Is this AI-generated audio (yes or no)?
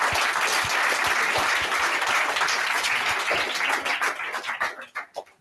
no